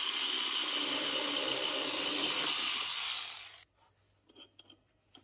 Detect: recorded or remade recorded